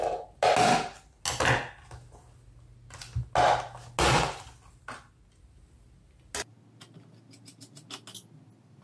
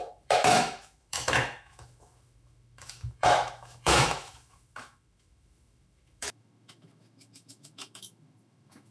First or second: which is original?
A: first